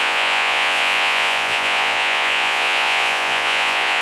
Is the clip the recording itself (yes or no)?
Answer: no